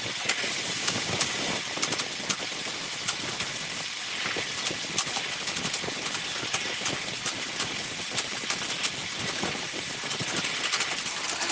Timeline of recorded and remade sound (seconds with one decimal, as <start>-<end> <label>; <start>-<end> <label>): 0.0-0.8 recorded; 0.8-1.4 remade; 1.4-11.5 recorded